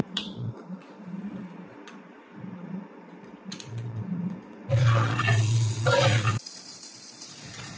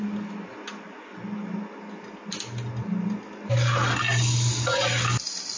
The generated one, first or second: first